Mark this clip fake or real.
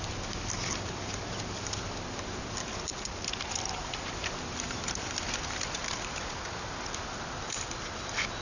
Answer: fake